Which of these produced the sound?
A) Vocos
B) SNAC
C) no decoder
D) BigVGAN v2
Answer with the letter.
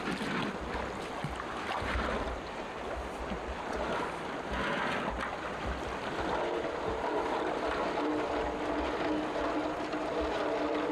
C